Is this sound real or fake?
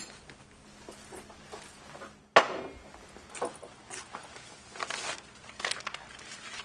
real